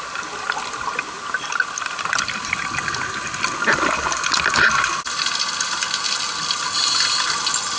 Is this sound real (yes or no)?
yes